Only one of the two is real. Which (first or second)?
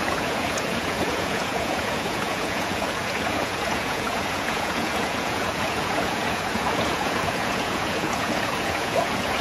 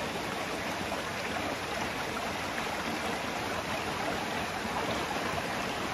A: second